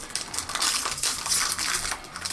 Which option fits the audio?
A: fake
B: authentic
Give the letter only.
B